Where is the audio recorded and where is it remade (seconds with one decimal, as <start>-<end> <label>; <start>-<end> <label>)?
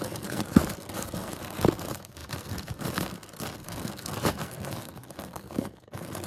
0.0-6.3 remade